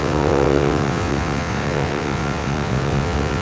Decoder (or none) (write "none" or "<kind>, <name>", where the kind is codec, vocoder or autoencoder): vocoder, WaveNeXt